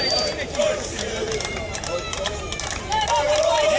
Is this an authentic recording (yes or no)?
no